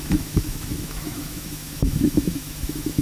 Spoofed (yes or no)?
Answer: yes